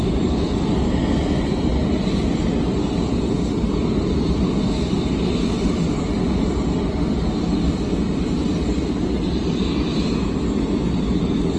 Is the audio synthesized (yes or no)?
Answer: no